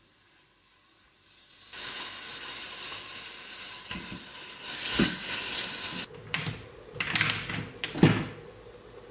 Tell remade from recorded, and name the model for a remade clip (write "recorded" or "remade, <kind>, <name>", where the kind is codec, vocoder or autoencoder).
recorded